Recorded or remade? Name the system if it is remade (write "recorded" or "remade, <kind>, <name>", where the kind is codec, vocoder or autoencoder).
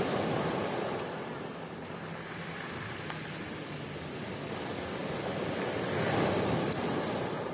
recorded